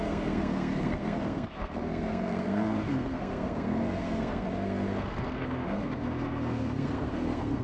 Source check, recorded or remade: remade